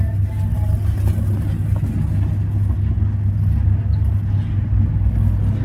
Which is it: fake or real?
real